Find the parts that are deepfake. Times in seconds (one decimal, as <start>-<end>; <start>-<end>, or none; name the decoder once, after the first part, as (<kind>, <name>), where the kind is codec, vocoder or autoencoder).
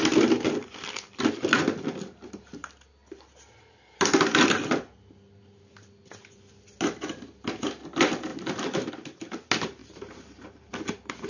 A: 8.3-8.9 (vocoder, BigVGAN v2); 9.8-10.7